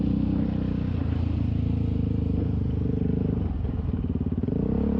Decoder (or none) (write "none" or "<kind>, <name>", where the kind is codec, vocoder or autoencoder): none